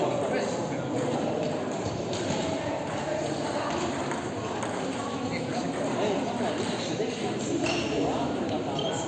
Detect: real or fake real